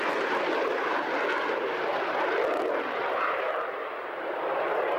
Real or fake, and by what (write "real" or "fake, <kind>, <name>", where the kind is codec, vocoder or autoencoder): real